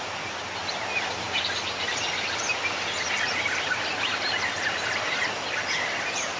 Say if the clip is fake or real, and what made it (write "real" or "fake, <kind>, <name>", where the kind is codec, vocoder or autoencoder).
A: real